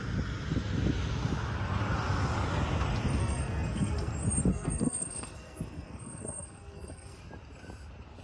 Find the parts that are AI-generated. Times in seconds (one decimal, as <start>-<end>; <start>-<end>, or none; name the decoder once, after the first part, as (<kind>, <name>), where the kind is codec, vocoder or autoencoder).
3.2-4.1 (codec, SNAC); 4.5-7.2